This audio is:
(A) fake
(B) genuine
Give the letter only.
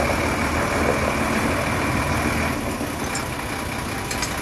B